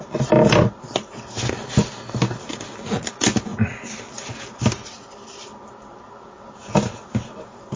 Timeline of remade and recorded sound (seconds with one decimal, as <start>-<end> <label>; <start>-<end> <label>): 0.0-7.8 recorded